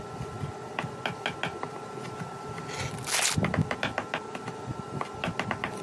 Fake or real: real